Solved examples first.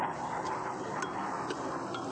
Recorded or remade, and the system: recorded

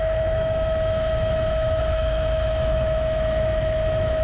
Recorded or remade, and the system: remade, autoencoder, DAC-VAE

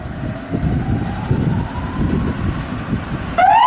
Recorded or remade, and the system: recorded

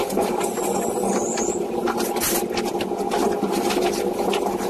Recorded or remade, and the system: recorded